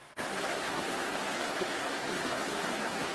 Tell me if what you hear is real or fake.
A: fake